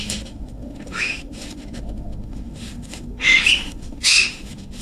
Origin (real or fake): fake